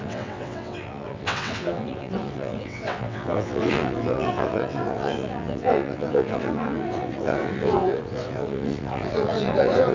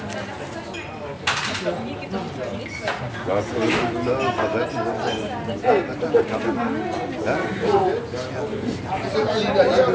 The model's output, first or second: first